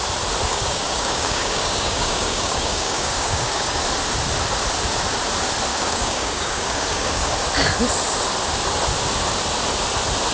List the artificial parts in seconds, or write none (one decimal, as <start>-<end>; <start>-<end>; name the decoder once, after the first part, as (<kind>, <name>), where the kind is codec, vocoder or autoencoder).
0.5-3.8 (codec, DAC); 5.7-7.3